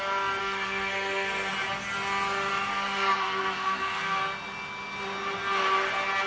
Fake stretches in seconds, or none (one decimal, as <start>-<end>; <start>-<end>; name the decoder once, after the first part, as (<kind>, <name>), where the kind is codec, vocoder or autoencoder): 0.4-1.5 (codec, SNAC); 2.7-4.2